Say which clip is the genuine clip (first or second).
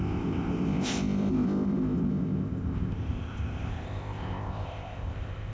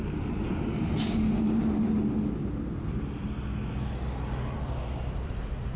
second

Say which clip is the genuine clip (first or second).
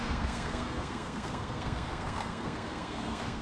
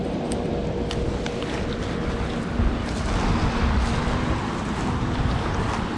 second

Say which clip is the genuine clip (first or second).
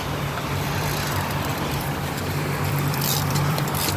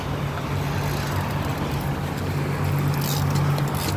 second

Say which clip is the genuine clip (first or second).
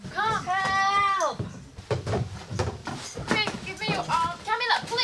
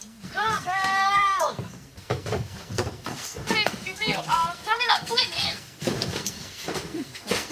first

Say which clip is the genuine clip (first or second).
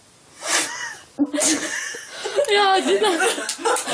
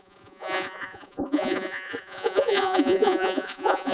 first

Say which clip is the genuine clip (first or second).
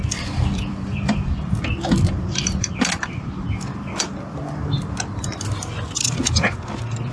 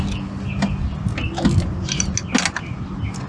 second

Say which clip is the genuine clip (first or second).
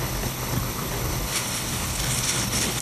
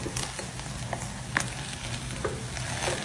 second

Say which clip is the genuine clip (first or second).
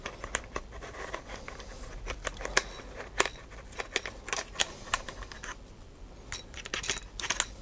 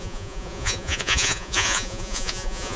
first